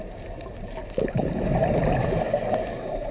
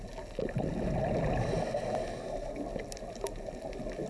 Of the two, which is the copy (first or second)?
first